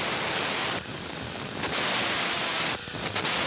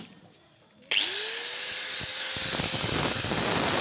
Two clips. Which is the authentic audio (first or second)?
second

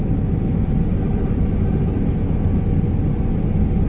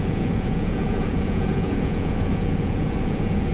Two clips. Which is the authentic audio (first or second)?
first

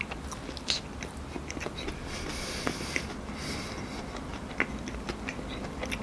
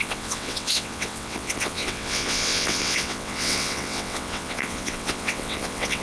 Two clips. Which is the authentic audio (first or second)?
first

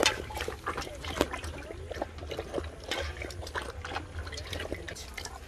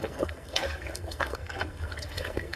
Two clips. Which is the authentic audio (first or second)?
first